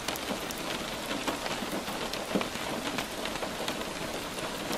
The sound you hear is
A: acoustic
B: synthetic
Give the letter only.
A